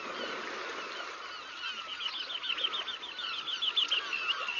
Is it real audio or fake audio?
real